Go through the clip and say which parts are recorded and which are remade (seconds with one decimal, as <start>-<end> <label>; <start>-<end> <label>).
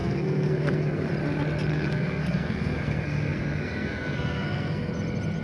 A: 0.0-1.1 remade; 1.1-1.7 recorded; 1.7-4.9 remade; 4.9-5.4 recorded